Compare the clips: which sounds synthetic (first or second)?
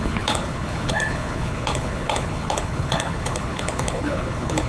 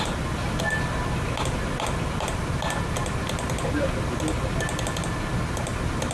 first